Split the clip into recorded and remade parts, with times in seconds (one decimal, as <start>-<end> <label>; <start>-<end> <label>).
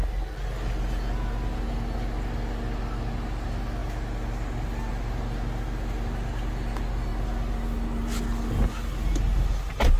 0.0-10.0 recorded